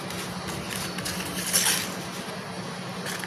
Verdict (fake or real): real